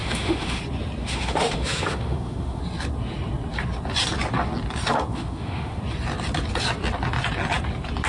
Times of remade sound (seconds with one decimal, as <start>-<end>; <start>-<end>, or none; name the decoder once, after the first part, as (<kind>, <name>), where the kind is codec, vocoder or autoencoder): 0.0-0.6 (autoencoder, DAC-VAE); 1.0-2.6; 5.1-5.8